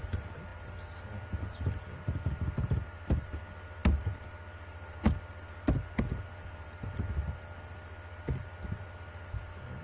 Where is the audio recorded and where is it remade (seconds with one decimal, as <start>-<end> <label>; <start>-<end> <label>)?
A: 0.0-9.8 recorded